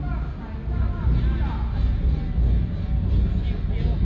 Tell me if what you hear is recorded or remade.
recorded